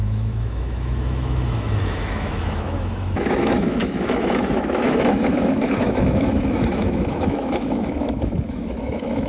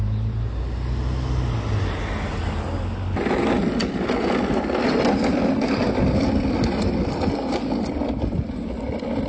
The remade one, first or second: first